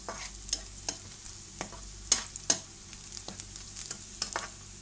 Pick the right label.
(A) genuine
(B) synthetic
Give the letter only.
A